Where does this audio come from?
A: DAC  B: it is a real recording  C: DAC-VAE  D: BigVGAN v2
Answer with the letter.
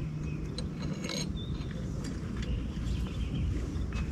B